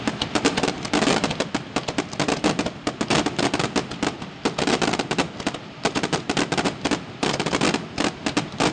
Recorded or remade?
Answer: recorded